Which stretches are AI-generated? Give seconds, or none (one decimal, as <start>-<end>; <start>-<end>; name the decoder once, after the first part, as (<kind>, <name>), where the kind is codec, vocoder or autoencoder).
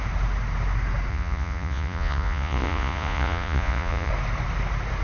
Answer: 1.1-4.1 (vocoder, Vocos)